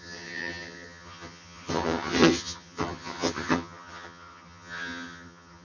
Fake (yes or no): yes